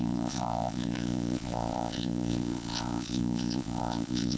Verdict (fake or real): fake